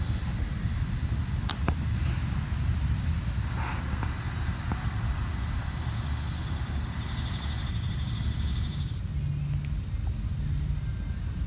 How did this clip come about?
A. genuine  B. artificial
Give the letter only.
A